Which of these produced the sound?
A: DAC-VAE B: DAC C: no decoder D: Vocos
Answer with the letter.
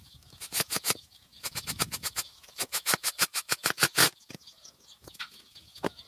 A